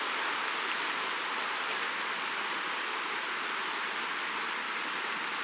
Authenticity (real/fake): real